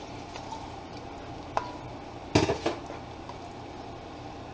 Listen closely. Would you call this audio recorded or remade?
recorded